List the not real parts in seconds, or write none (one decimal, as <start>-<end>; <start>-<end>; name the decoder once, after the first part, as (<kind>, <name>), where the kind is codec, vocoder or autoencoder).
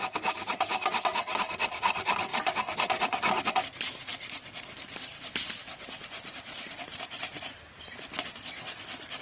none